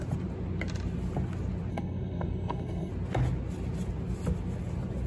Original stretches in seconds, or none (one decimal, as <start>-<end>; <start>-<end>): 0.0-1.7; 2.9-5.1